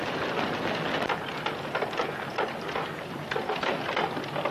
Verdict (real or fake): real